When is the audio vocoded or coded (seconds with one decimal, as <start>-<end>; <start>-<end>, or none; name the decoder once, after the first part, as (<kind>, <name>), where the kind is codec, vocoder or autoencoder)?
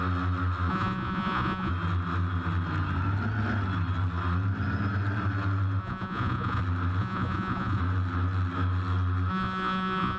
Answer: 0.7-1.7 (vocoder, Vocos); 5.8-6.6; 7.0-7.8; 9.3-10.2